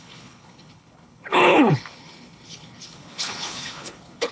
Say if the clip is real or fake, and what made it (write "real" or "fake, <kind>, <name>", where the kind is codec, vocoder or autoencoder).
fake, codec, HILCodec